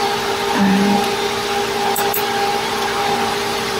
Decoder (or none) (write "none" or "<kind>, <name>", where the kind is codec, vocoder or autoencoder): vocoder, BigVGAN v2